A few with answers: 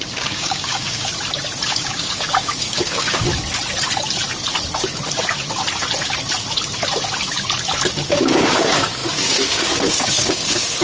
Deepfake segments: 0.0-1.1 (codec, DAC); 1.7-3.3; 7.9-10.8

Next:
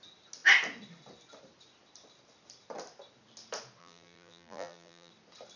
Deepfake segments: 3.8-5.1 (vocoder, BigVGAN v2)

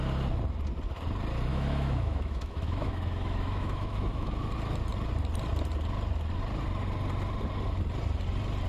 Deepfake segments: 1.5-4.3 (autoencoder, DAC-VAE)